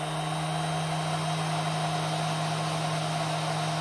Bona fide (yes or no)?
yes